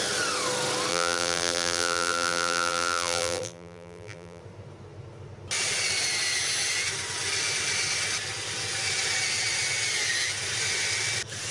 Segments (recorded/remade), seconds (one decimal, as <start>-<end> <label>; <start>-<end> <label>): 0.0-0.9 recorded; 0.9-4.4 remade; 4.4-11.5 recorded